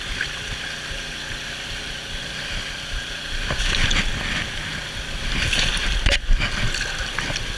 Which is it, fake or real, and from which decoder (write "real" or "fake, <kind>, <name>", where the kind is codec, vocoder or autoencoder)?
real